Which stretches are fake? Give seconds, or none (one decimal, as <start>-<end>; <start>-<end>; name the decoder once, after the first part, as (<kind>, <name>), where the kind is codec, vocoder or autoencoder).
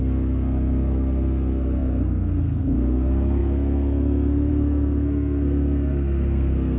0.0-6.8 (codec, SNAC)